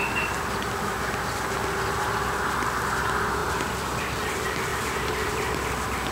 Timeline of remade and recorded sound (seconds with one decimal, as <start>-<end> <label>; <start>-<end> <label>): 0.0-3.4 recorded; 3.4-4.1 remade; 4.1-6.1 recorded